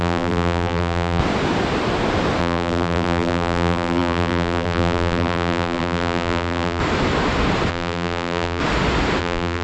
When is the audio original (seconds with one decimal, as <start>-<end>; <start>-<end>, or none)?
1.2-2.4; 6.8-7.7; 8.6-9.2

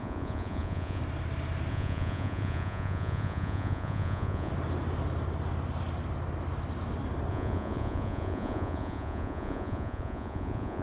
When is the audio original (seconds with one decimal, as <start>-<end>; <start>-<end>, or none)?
1.0-1.7; 4.5-7.3

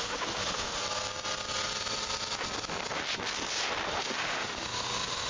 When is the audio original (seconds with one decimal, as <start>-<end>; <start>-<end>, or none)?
0.8-3.9

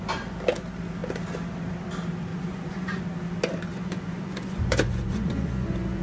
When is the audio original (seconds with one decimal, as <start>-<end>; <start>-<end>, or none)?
0.0-2.3; 3.0-3.7

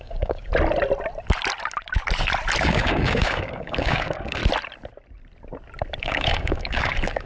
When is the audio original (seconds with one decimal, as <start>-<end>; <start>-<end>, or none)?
0.5-2.6; 4.4-6.0

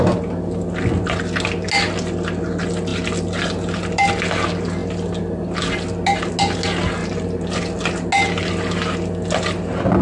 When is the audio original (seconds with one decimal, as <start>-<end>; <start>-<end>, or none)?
0.0-7.0; 7.6-10.0

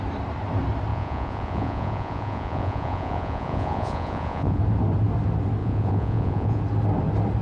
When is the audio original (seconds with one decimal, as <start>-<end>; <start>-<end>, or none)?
0.0-0.9; 4.6-5.6; 6.6-7.4